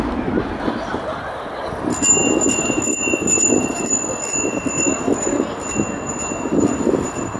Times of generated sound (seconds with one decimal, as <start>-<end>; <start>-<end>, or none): none